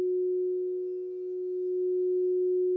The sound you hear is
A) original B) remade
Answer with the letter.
A